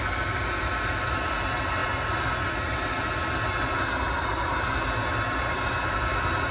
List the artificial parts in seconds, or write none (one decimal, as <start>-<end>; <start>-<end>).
none

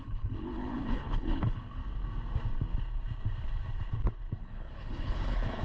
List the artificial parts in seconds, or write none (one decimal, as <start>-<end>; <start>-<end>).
0.0-1.8; 4.4-5.6

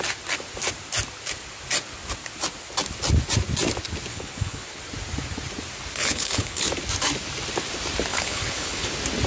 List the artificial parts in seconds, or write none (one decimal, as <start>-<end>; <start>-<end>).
4.1-4.8; 6.0-6.7; 8.1-8.9

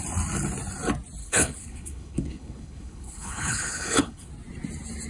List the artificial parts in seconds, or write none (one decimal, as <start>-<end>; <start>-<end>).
1.2-4.3